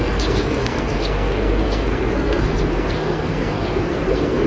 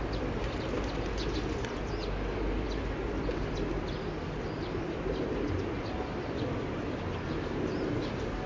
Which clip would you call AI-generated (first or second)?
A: first